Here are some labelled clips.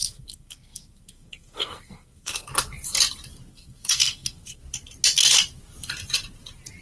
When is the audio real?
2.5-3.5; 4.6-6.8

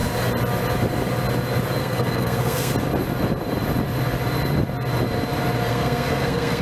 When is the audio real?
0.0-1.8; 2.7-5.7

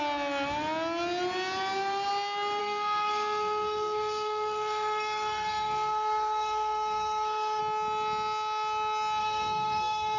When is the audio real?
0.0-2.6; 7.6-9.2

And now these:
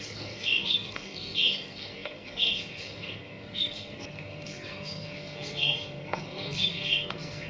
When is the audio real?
none

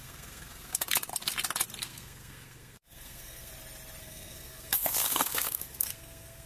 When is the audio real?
1.1-1.8; 3.5-4.0

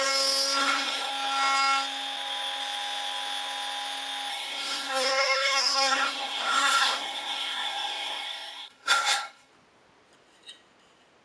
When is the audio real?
0.0-0.6; 1.1-4.3; 9.5-11.2

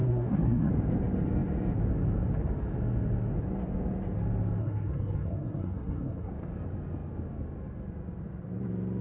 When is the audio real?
0.7-4.6; 6.3-9.0

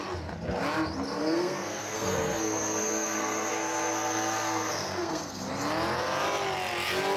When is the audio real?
0.0-1.2; 5.5-7.2